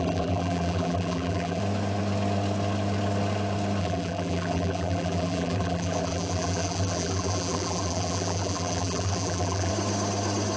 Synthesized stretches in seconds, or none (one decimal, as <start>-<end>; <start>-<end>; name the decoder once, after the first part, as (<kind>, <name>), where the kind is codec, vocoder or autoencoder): 0.0-1.6 (vocoder, BigVGAN v2); 3.8-9.7